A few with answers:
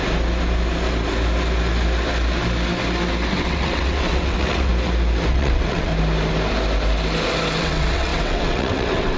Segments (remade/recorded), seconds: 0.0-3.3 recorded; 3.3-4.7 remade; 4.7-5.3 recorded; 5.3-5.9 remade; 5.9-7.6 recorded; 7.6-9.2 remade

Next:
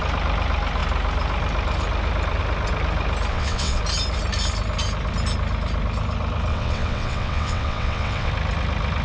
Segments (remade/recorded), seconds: 0.0-3.3 recorded; 3.3-3.8 remade; 3.8-6.5 recorded; 6.5-8.3 remade; 8.3-9.0 recorded

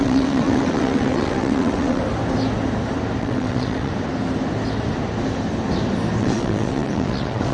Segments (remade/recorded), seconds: 0.0-2.0 remade; 2.0-3.2 recorded; 3.2-3.9 remade; 3.9-6.2 recorded; 6.2-7.5 remade